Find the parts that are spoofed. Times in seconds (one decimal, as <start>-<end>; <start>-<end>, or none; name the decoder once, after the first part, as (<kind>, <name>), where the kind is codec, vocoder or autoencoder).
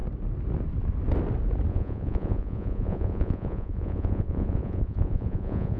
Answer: 1.7-5.8 (vocoder, Vocos)